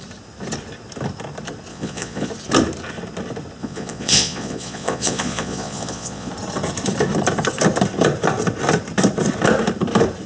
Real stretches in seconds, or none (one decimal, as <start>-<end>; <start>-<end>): 0.0-1.7; 2.3-3.6; 6.3-10.3

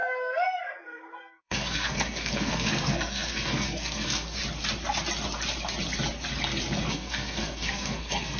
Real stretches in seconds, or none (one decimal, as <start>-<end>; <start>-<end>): 4.4-6.9

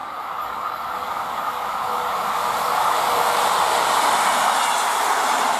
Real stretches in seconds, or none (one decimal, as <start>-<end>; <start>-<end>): 3.4-5.6

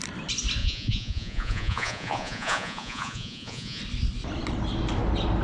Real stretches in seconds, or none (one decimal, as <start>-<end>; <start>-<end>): 0.0-0.6; 3.8-5.4

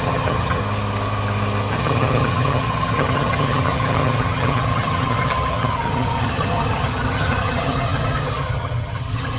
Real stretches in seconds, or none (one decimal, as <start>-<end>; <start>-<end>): 0.6-1.7

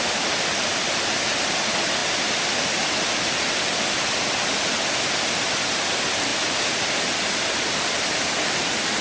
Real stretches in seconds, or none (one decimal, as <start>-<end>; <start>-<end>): 0.0-6.3; 8.3-9.0